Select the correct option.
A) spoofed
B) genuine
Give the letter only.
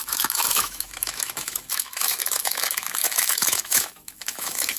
A